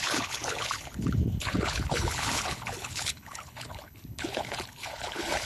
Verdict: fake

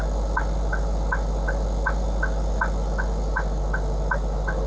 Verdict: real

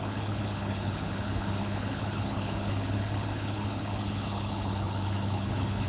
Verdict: fake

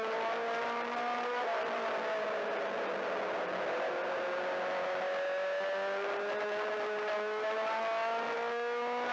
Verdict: real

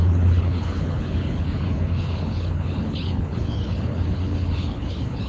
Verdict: fake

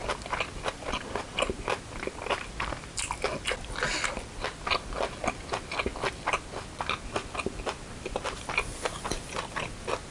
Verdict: real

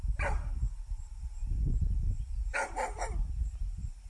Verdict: real